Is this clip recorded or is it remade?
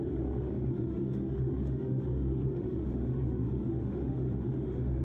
remade